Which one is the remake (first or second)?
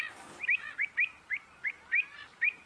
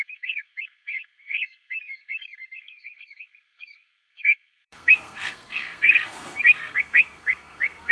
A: second